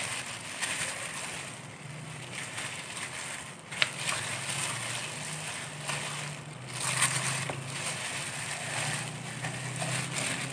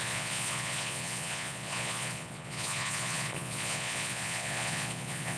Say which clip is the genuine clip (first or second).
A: first